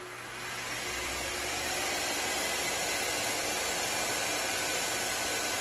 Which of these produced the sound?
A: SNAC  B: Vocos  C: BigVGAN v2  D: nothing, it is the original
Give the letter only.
D